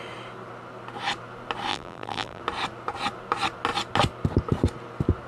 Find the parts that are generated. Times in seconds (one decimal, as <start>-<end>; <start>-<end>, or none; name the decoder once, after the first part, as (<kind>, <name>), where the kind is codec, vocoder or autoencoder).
1.7-2.4 (vocoder, BigVGAN v2)